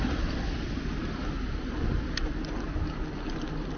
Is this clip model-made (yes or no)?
no